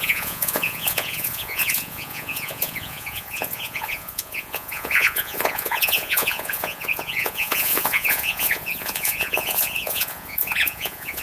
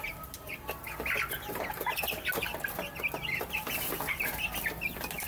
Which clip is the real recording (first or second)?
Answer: second